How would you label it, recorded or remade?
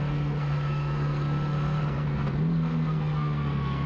remade